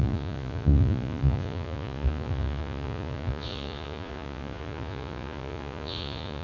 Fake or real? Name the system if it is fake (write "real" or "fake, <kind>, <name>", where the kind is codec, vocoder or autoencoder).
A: fake, vocoder, Vocos